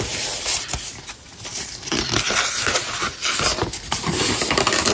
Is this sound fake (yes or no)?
no